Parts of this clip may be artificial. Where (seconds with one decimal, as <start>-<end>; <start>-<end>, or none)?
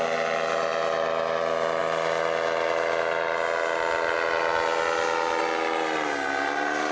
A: none